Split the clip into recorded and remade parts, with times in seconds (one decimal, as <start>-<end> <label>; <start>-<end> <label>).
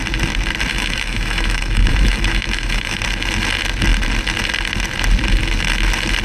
0.0-0.7 recorded; 0.7-3.0 remade; 3.0-6.2 recorded